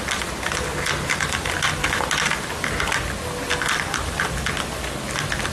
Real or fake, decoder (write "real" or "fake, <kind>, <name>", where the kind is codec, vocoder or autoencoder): real